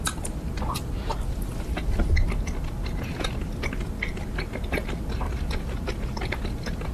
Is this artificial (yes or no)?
no